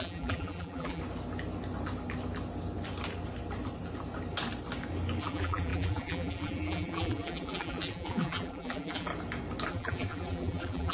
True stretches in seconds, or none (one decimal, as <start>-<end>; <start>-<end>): 1.0-5.2; 9.1-9.7